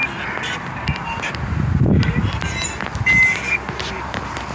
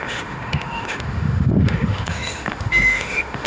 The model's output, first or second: second